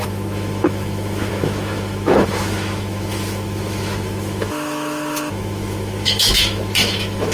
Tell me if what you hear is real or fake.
fake